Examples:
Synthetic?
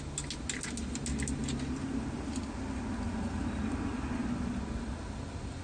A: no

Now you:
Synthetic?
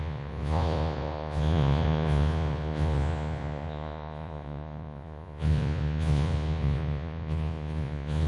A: yes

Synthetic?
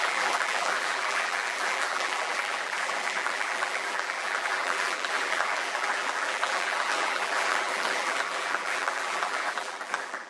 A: yes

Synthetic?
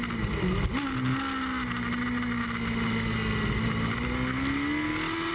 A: no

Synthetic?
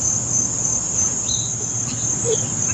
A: no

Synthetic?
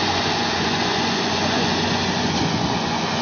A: yes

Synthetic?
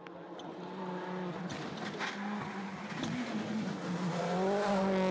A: no